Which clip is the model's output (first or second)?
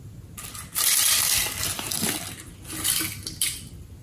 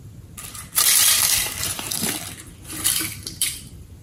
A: second